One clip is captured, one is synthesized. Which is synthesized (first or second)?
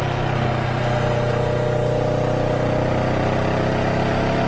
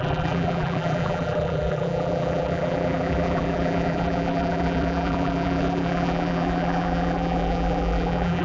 second